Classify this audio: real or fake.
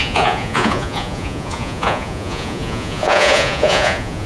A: fake